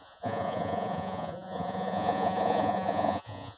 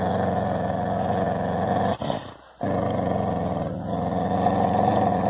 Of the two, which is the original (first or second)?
second